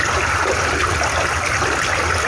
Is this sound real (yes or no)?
yes